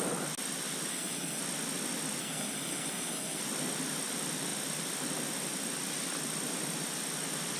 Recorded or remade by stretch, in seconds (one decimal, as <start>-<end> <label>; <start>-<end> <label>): 0.0-0.9 recorded; 0.9-1.4 remade; 1.4-2.2 recorded; 2.2-3.4 remade; 3.4-7.6 recorded

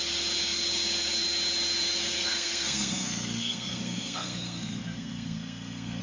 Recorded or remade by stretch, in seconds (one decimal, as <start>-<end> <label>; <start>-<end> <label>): 0.0-2.1 recorded; 2.1-6.0 remade

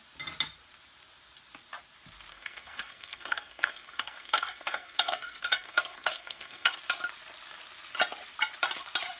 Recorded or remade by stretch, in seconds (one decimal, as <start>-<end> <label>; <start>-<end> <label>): 0.0-2.3 recorded; 2.3-6.8 remade; 6.8-9.2 recorded

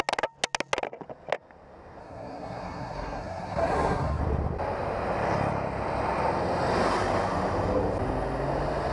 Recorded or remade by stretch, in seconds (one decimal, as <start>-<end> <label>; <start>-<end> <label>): 0.0-2.0 recorded; 2.0-4.2 remade; 4.2-8.9 recorded

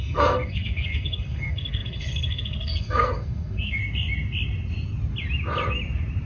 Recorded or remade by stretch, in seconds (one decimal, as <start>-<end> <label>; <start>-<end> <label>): 0.0-3.8 remade; 3.8-6.3 recorded

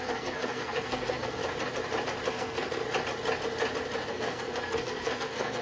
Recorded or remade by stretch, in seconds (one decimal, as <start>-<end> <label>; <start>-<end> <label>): 0.0-1.4 remade; 1.4-2.3 recorded; 2.3-2.8 remade; 2.8-4.1 recorded; 4.1-5.6 remade